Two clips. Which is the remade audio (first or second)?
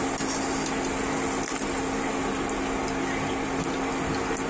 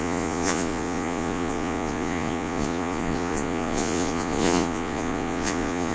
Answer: second